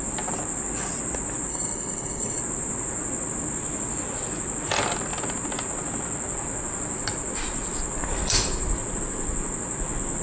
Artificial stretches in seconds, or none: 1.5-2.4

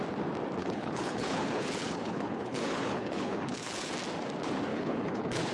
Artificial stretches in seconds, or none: 0.6-3.9; 4.7-5.5

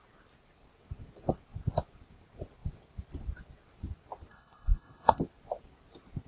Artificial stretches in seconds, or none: 4.3-5.2